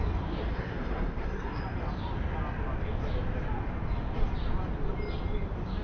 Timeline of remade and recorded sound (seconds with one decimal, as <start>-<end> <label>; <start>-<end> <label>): 0.0-0.5 recorded; 0.5-1.6 remade; 1.6-5.8 recorded